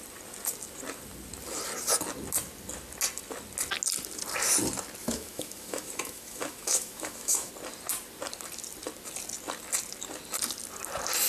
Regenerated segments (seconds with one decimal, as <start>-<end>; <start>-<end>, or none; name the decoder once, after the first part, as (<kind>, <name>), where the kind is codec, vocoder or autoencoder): 5.0-7.5 (autoencoder, DAC-VAE)